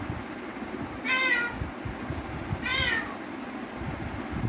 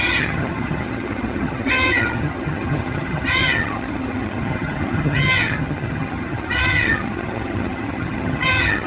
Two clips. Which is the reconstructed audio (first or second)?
second